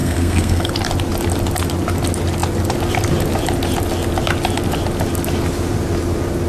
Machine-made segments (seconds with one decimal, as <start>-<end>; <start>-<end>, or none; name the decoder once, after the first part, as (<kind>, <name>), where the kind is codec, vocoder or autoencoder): 0.0-0.7 (codec, SNAC)